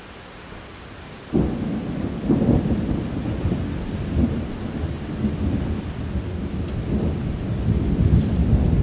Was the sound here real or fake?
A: real